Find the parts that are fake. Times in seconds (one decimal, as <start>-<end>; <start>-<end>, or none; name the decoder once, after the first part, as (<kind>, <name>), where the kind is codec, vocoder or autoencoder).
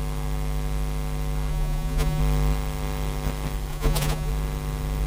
1.5-2.2 (vocoder, Vocos); 3.7-4.3